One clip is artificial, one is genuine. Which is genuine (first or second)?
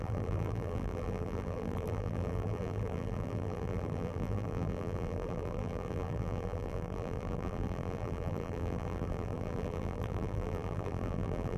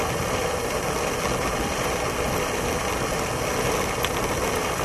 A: second